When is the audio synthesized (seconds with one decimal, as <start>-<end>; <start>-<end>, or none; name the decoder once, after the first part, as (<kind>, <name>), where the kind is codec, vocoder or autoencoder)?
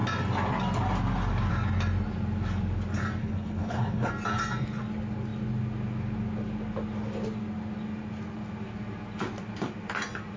3.2-4.1 (codec, HILCodec)